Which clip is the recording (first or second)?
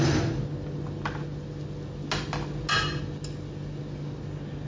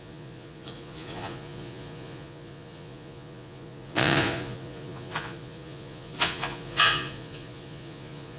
first